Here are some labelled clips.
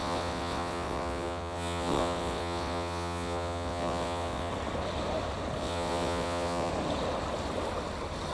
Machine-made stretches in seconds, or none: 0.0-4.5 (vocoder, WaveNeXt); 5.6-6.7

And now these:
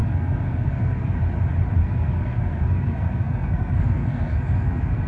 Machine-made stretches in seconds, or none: 0.0-1.2 (codec, SNAC); 1.8-5.1

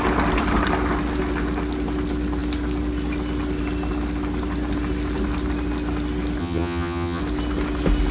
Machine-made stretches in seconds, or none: 6.4-7.2 (vocoder, HiFi-GAN)

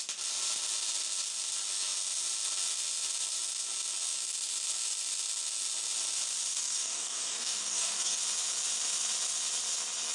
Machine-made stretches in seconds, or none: 6.5-8.2 (codec, DAC)

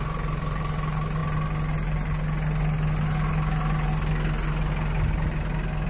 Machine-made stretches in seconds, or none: none

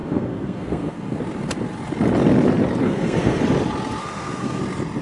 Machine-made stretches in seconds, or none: 0.0-1.2 (codec, SNAC); 2.8-3.4; 4.0-4.6